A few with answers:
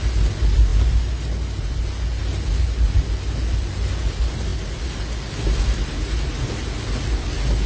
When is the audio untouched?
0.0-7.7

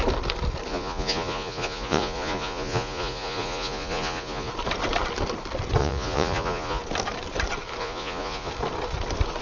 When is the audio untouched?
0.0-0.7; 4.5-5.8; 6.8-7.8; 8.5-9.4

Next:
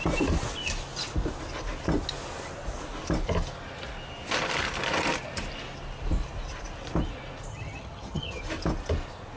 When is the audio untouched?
0.0-7.5; 8.4-9.4

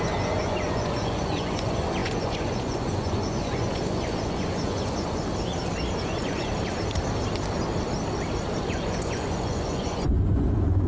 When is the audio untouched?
5.3-6.0; 6.5-8.6

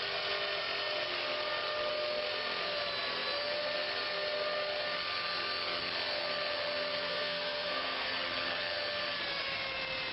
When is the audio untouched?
0.0-7.1; 8.1-10.1

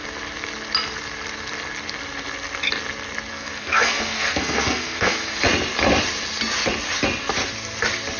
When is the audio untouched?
0.0-3.3; 5.4-8.2

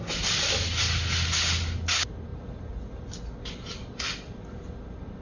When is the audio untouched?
0.0-5.2

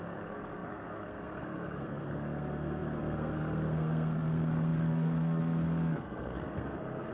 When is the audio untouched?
none